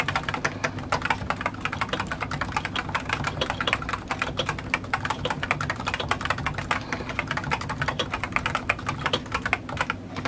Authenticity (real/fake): real